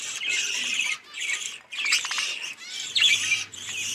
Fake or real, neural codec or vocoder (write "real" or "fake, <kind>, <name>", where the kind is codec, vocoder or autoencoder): fake, vocoder, BigVGAN v2